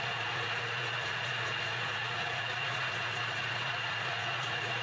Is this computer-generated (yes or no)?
yes